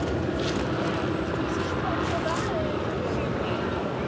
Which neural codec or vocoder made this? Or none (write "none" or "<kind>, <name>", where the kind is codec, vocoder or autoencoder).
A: none